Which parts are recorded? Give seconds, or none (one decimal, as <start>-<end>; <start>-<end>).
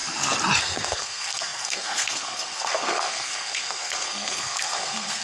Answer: 0.0-0.6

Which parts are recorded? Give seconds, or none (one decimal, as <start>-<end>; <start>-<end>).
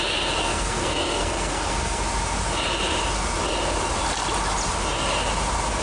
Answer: 0.0-0.4; 2.0-5.8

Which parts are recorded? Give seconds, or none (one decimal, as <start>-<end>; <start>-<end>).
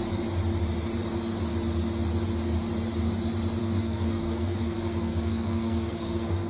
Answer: 0.0-3.6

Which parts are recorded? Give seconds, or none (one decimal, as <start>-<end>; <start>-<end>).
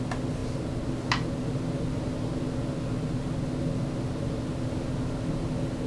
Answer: 0.0-5.9